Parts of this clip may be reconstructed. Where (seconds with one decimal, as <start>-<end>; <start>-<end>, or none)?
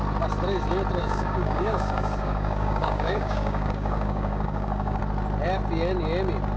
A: 1.0-5.0